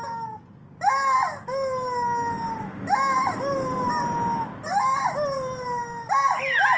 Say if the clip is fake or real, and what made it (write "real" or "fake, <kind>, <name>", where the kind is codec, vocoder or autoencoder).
real